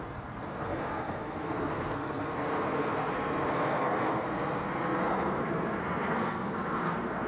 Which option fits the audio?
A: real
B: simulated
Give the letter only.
B